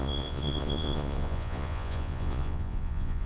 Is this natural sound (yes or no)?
no